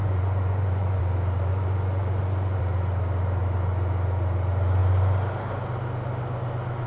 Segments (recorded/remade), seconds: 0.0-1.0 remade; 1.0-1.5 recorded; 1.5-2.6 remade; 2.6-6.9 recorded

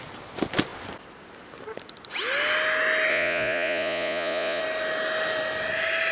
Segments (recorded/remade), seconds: 0.0-3.1 recorded; 3.1-4.6 remade; 4.6-6.1 recorded

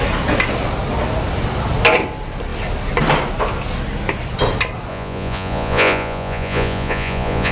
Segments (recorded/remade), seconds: 0.0-4.9 recorded; 4.9-7.5 remade

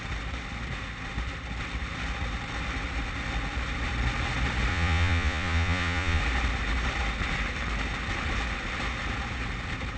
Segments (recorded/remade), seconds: 0.0-4.7 recorded; 4.7-6.2 remade; 6.2-10.0 recorded

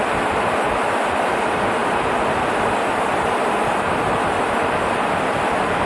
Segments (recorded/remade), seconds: 0.0-5.9 recorded

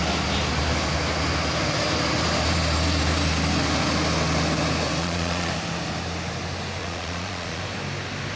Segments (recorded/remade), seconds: 0.0-5.0 recorded; 5.0-5.5 remade; 5.5-6.8 recorded; 6.8-7.6 remade; 7.6-8.4 recorded

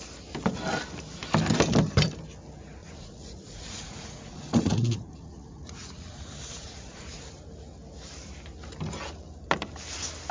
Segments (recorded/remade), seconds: 0.0-2.8 recorded; 2.8-7.2 remade; 7.2-10.3 recorded